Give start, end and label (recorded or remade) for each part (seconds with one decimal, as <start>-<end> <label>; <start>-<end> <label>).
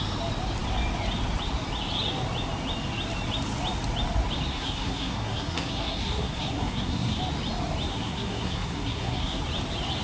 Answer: 0.0-4.5 recorded; 4.5-7.2 remade; 7.2-7.9 recorded; 7.9-9.4 remade; 9.4-10.0 recorded